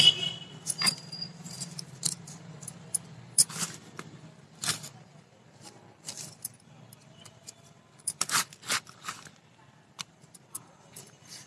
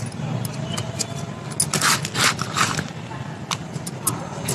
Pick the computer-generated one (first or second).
first